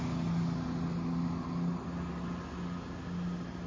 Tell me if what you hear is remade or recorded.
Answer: recorded